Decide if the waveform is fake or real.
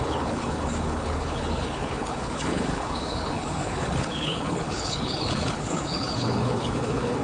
fake